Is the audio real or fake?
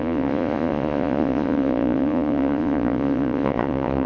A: fake